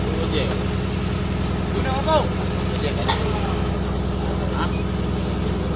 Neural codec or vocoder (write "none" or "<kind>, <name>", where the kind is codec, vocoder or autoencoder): none